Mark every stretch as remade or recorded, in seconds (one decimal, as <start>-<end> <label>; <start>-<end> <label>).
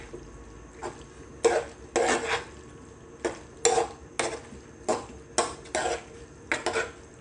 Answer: 0.0-7.2 recorded